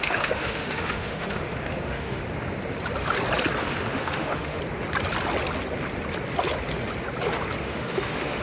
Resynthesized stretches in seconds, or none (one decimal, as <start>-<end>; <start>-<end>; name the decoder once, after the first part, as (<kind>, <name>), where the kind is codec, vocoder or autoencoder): 0.0-2.2 (autoencoder, DAC-VAE); 3.6-4.6; 7.6-8.4